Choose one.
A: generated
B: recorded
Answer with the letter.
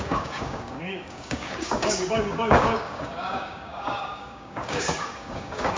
A